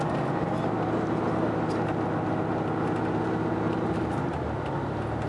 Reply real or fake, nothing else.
real